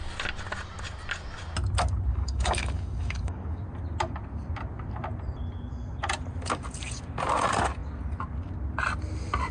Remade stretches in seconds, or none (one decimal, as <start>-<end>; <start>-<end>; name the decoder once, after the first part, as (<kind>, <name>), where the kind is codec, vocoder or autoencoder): 2.1-3.6 (codec, DAC)